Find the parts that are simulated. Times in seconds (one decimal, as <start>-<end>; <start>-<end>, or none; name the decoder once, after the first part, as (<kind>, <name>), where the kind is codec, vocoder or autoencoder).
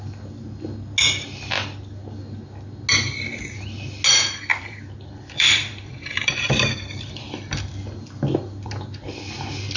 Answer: 4.5-8.7 (vocoder, BigVGAN v2)